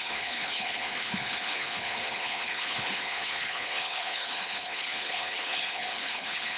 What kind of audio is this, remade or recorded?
remade